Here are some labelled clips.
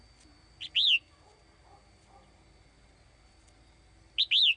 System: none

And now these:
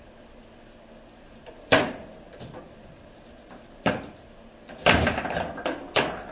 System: vocoder, BigVGAN v2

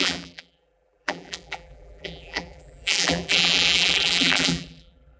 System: vocoder, BigVGAN v2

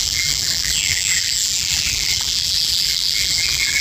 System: vocoder, BigVGAN v2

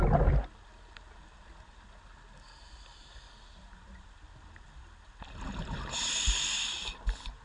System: none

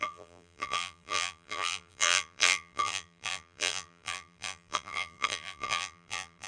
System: vocoder, BigVGAN v2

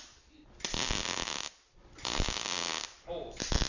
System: none